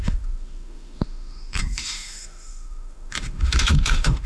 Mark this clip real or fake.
fake